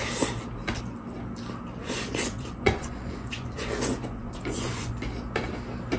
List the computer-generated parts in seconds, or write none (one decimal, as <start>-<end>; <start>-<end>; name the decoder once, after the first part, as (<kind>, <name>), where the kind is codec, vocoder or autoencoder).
1.8-4.9 (vocoder, Vocos)